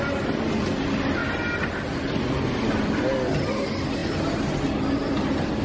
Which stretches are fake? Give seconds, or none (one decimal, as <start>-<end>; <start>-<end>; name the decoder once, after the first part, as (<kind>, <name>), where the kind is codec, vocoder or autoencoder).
none

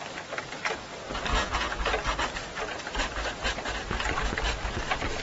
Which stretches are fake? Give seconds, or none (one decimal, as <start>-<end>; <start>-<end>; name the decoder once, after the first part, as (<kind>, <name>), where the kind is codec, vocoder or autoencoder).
1.3-1.8 (vocoder, Vocos)

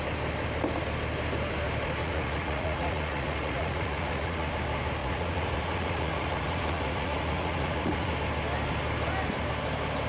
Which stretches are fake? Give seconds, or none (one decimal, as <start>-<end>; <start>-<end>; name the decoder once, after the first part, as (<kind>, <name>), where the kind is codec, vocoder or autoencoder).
2.0-4.5 (vocoder, Vocos); 5.0-8.1

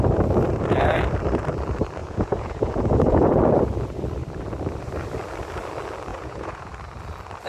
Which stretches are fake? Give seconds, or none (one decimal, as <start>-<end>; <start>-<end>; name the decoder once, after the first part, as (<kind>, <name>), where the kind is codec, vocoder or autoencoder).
2.0-3.4 (vocoder, Vocos); 6.1-6.7